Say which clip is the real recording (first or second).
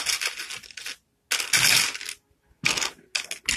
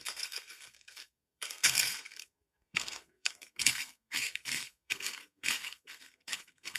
first